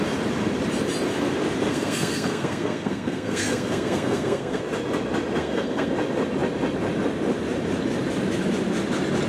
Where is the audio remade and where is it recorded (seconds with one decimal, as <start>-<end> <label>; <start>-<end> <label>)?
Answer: 0.0-1.7 recorded; 1.7-4.6 remade; 4.6-5.4 recorded; 5.4-5.9 remade; 5.9-9.3 recorded